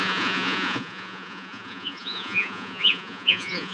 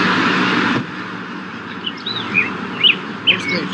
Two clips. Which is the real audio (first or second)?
second